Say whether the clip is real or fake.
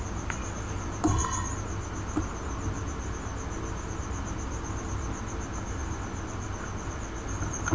real